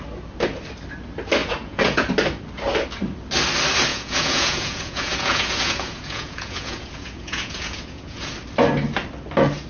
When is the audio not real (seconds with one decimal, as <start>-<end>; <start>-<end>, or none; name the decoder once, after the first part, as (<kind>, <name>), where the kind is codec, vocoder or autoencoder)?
1.4-2.1 (vocoder, Vocos); 3.9-8.3